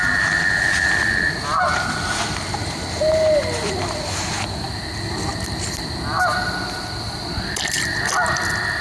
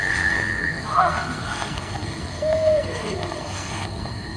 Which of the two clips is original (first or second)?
first